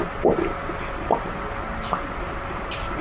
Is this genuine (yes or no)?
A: yes